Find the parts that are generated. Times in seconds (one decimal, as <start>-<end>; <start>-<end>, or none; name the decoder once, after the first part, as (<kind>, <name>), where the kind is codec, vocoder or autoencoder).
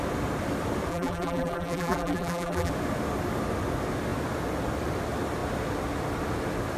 0.9-2.7 (vocoder, BigVGAN v2)